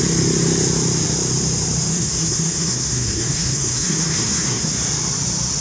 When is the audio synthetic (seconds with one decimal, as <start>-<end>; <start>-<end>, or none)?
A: 1.9-4.7